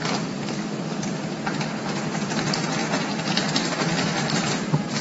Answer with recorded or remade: remade